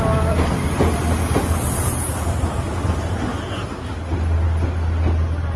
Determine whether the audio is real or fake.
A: real